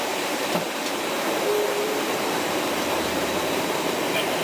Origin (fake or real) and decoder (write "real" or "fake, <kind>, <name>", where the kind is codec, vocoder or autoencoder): fake, vocoder, BigVGAN v2